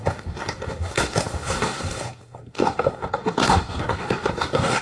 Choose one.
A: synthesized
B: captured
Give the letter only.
A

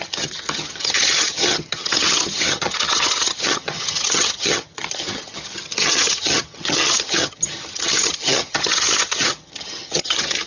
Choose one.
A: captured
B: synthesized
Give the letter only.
B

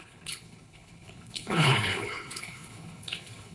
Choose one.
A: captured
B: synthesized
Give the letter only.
B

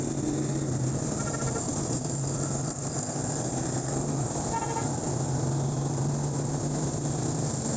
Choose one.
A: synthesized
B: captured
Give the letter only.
B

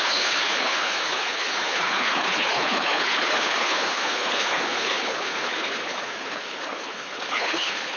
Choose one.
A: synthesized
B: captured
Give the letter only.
A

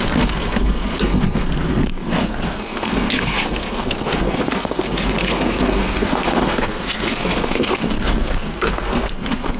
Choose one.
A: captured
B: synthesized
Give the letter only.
B